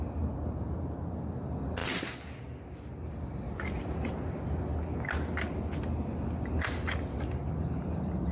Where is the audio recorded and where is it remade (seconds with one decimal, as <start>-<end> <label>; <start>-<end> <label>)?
0.0-8.3 recorded